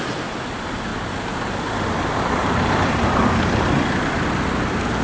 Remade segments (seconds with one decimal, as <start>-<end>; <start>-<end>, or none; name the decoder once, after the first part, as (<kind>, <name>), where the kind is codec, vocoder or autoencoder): 0.9-1.5 (vocoder, BigVGAN v2); 2.4-3.6